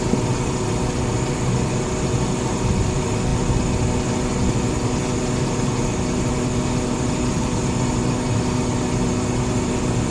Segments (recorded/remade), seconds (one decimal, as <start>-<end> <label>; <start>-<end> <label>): 0.0-10.1 recorded